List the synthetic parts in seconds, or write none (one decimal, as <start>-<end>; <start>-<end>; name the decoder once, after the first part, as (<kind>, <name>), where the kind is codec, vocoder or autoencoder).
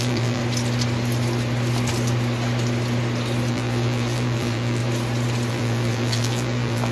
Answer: 0.0-0.4 (vocoder, BigVGAN v2); 3.5-4.8; 5.5-6.9